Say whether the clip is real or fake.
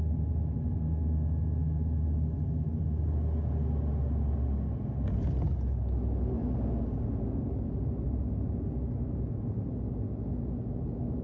real